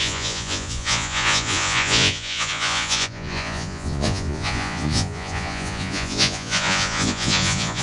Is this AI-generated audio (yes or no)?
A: yes